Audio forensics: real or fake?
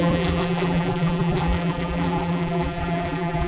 fake